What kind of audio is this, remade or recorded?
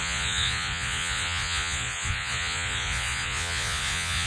remade